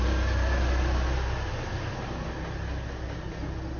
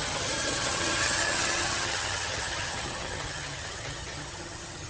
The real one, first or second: first